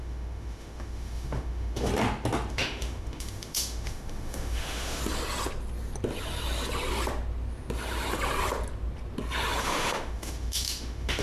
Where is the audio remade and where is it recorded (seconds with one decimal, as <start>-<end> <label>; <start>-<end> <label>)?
0.0-1.9 remade; 1.9-2.5 recorded; 2.5-5.0 remade; 5.0-9.6 recorded; 9.6-11.2 remade